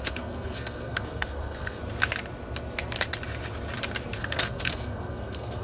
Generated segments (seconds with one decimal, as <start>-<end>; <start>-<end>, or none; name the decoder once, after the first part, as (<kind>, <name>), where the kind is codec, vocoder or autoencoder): 0.0-1.8 (codec, SNAC); 4.2-5.6